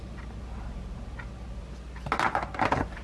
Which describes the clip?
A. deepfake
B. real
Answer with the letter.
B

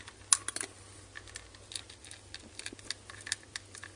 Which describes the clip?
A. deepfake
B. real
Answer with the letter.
B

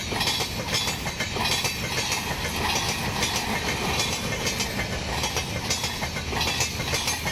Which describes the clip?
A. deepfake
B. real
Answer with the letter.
B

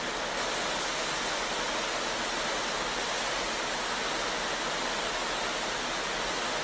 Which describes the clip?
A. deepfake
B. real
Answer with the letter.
B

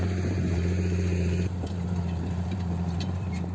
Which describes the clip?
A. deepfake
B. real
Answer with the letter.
A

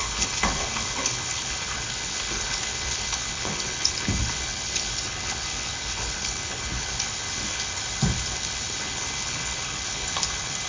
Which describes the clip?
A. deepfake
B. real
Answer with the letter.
A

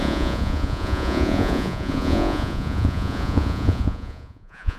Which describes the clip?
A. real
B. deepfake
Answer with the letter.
B